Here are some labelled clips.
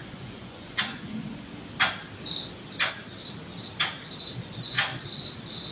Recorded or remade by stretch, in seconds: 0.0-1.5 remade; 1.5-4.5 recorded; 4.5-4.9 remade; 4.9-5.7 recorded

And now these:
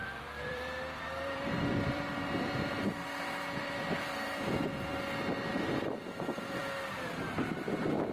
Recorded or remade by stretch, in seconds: 0.0-4.9 remade; 4.9-5.5 recorded; 5.5-6.6 remade; 6.6-7.3 recorded; 7.3-8.1 remade

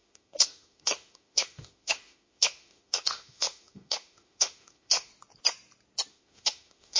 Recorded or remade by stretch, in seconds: 0.0-5.1 remade; 5.1-6.1 recorded; 6.1-7.0 remade

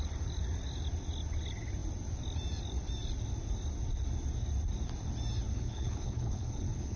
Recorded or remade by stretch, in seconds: 0.0-5.5 recorded; 5.5-7.0 remade

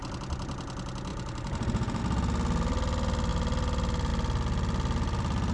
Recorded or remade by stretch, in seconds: 0.0-1.1 recorded; 1.1-2.0 remade; 2.0-5.5 recorded